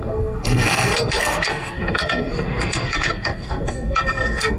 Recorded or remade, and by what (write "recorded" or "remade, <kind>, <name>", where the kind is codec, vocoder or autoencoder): remade, codec, SNAC